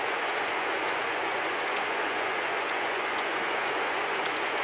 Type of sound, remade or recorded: remade